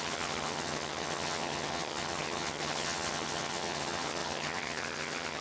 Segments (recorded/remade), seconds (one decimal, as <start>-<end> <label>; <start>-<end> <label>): 0.0-5.4 remade